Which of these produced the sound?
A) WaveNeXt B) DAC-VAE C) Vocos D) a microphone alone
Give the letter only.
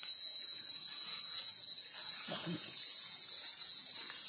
C